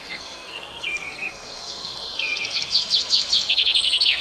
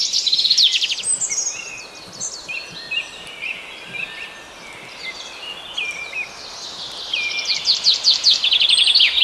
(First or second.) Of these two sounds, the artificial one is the first